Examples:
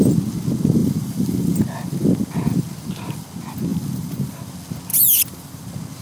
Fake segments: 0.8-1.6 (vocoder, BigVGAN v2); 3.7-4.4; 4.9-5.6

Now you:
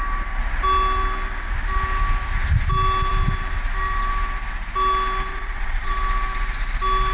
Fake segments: 5.3-5.9 (vocoder, Vocos)

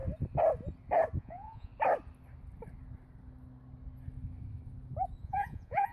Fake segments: 1.2-1.7 (vocoder, Vocos); 5.2-5.9

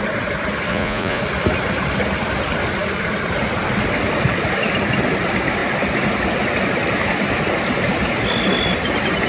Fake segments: 0.7-1.2 (vocoder, Vocos)

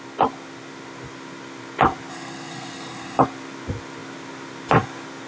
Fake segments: 2.1-3.2 (codec, SNAC)

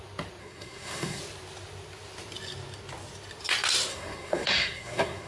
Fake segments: 0.4-1.2 (codec, SNAC); 3.9-5.3

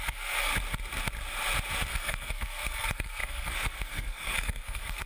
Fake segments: 0.0-0.5 (codec, SNAC); 1.9-5.1

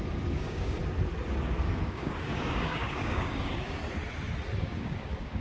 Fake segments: 0.0-0.8 (codec, DAC); 1.4-3.8; 4.6-5.4